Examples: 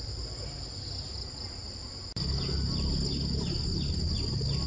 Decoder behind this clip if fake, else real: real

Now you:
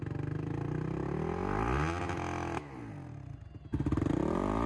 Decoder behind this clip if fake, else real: real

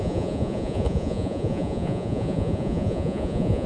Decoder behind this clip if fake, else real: fake, vocoder, Vocos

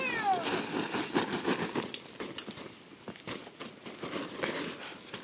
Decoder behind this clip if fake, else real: real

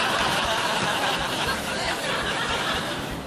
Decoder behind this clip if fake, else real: real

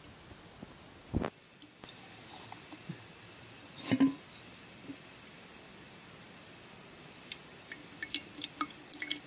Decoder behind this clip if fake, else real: real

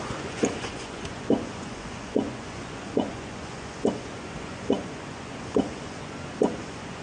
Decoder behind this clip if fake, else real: fake, vocoder, Vocos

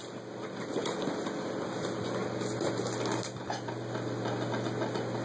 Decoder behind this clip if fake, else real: real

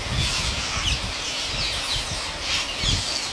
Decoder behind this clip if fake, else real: real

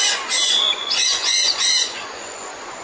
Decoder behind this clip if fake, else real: fake, vocoder, Vocos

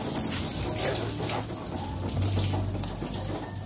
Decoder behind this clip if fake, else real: real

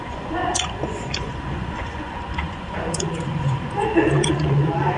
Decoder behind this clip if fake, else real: fake, vocoder, Vocos